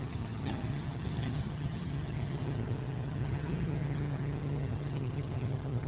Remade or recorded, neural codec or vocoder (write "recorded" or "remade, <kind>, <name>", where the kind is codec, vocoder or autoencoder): remade, vocoder, HiFi-GAN